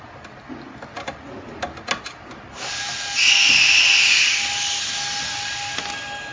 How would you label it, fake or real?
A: real